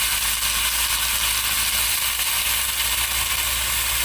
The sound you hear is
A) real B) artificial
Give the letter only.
A